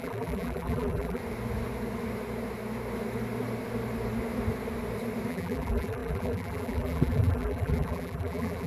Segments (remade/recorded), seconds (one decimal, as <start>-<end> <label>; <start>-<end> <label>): 0.0-1.2 remade; 1.2-5.3 recorded; 5.3-8.7 remade